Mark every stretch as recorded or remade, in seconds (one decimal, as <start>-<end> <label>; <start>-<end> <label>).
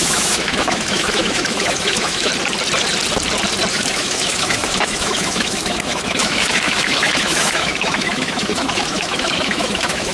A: 0.0-2.3 remade; 2.3-3.7 recorded; 3.7-10.1 remade